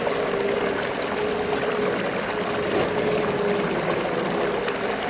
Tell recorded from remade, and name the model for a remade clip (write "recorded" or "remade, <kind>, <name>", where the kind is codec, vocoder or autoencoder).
recorded